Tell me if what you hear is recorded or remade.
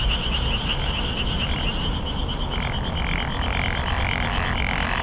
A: recorded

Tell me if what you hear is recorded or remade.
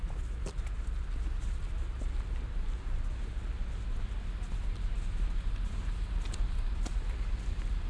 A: recorded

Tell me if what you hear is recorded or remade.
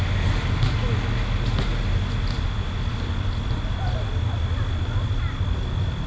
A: recorded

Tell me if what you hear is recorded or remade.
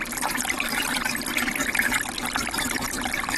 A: remade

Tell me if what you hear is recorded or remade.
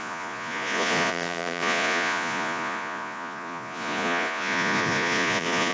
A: remade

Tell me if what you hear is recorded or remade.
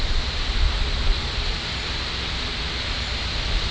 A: recorded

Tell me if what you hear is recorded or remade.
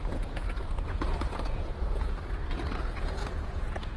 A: remade